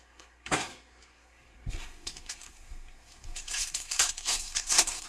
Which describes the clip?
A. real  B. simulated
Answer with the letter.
B